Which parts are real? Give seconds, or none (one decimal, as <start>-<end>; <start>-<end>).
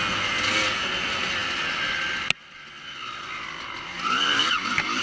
0.0-5.0